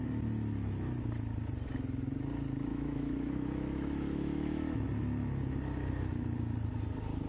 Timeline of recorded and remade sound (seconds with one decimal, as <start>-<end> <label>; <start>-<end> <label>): 0.0-2.7 recorded; 2.7-4.8 remade; 4.8-7.3 recorded